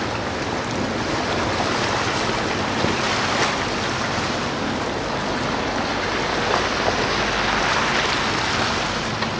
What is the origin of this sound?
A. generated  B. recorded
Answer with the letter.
B